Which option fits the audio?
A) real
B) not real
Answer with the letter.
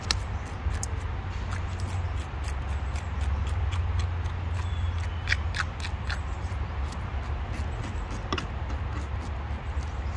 A